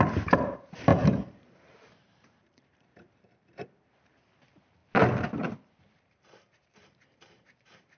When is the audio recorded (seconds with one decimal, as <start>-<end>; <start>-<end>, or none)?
4.8-5.8